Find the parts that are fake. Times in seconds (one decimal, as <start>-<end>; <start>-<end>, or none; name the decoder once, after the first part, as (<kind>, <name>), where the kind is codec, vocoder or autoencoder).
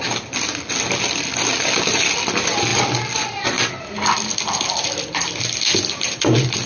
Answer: 0.0-6.7 (vocoder, BigVGAN v2)